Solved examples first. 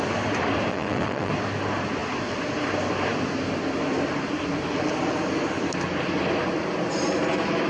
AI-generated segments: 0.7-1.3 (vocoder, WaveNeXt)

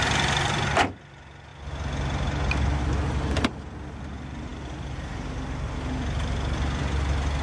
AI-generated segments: none

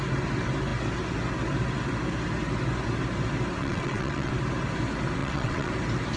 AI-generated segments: 3.6-4.3 (vocoder, WaveNeXt); 5.2-5.7

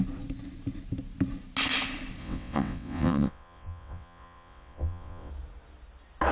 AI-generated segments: 2.2-5.3 (vocoder, WaveNeXt)

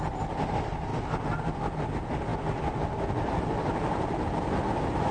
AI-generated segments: none

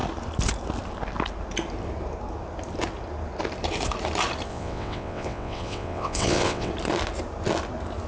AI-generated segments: 4.5-6.7 (vocoder, WaveNeXt)

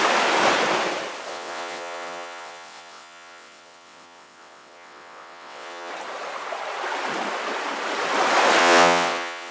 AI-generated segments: 1.3-5.9 (vocoder, WaveNeXt); 8.6-9.5

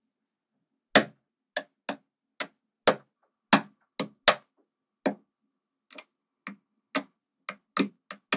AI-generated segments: none